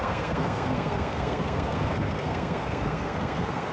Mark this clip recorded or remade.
remade